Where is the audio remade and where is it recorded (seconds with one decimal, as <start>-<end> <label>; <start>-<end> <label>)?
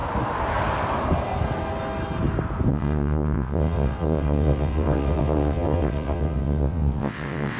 0.0-2.7 recorded; 2.7-7.6 remade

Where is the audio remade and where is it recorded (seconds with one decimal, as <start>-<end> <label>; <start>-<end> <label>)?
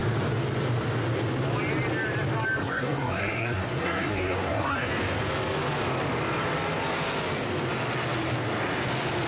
0.0-2.6 recorded; 2.6-4.9 remade; 4.9-9.3 recorded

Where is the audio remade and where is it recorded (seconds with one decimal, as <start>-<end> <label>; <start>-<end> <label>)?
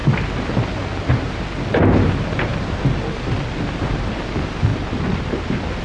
0.0-4.7 recorded; 4.7-5.8 remade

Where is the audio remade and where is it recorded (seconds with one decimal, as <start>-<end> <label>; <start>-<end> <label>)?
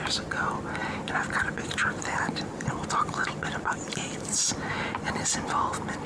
0.0-0.8 recorded; 0.8-4.5 remade; 4.5-6.1 recorded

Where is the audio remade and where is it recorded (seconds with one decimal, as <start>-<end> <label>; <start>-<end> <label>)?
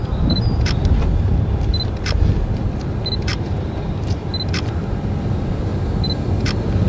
0.0-3.3 recorded; 3.3-4.3 remade; 4.3-6.9 recorded